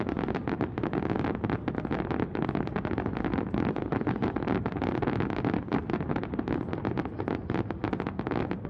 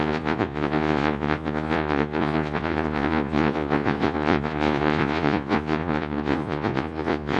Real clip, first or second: first